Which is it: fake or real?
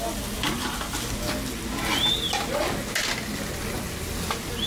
real